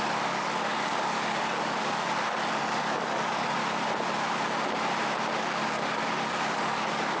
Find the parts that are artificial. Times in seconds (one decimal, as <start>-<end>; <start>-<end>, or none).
0.0-3.6; 5.3-7.2